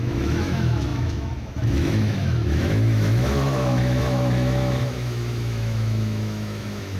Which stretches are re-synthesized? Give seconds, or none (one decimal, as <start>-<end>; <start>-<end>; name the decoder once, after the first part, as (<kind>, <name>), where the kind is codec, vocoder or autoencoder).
0.0-7.0 (autoencoder, DAC-VAE)